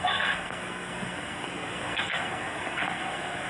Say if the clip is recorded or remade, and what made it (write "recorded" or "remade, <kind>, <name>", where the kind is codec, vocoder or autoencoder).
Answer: remade, codec, SNAC